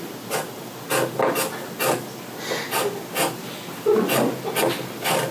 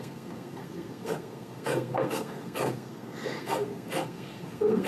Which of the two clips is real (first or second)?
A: first